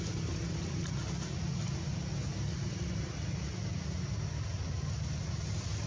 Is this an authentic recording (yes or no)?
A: yes